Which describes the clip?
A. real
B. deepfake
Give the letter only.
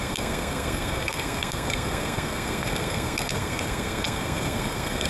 B